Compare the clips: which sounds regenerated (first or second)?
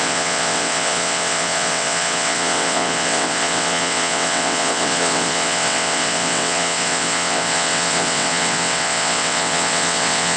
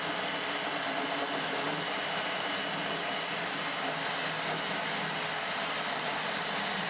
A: first